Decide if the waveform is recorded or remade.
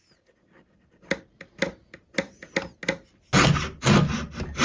recorded